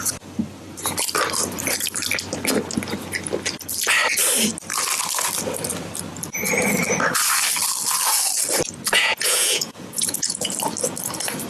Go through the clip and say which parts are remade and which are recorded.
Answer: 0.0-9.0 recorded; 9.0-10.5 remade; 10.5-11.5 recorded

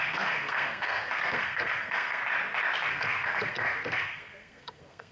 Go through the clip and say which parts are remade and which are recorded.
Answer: 0.0-2.2 remade; 2.2-2.9 recorded; 2.9-5.1 remade

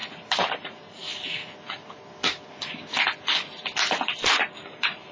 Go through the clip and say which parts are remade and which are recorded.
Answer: 0.0-0.6 recorded; 0.6-1.0 remade; 1.0-4.1 recorded; 4.1-5.1 remade

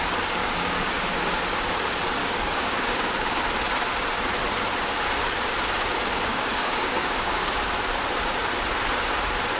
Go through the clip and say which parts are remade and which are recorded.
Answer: 0.0-0.4 recorded; 0.4-1.3 remade; 1.3-2.2 recorded; 2.2-3.4 remade; 3.4-6.3 recorded; 6.3-7.5 remade; 7.5-9.6 recorded

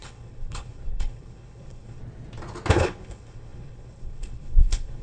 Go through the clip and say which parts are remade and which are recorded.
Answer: 0.0-2.0 remade; 2.0-2.7 recorded; 2.7-5.0 remade

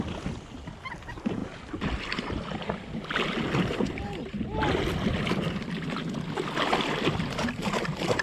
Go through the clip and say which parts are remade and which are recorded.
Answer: 0.0-8.2 recorded